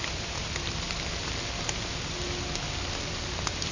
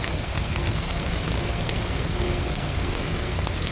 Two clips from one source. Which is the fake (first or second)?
second